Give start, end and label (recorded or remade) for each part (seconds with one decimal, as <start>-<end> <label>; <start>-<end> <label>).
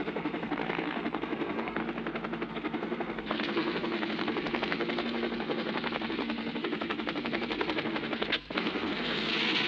0.0-1.8 remade; 1.8-2.5 recorded; 2.5-9.7 remade